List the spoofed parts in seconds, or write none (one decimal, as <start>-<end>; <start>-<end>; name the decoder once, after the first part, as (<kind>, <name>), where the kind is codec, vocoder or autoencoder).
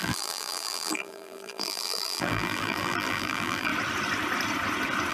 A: 0.0-3.7 (vocoder, BigVGAN v2)